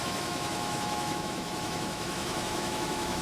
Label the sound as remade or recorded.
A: remade